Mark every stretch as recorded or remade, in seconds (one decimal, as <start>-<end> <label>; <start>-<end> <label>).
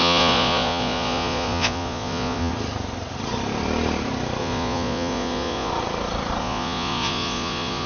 0.0-2.5 remade; 2.5-4.4 recorded; 4.4-5.7 remade; 5.7-6.4 recorded; 6.4-7.9 remade